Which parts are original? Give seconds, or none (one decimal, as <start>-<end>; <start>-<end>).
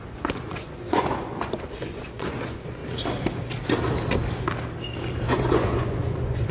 2.8-5.3